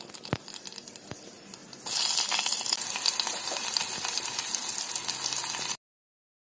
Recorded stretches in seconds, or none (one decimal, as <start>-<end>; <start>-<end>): 0.0-6.4